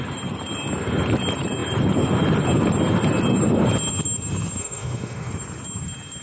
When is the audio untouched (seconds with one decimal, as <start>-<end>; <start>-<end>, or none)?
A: 0.0-4.6; 5.3-6.2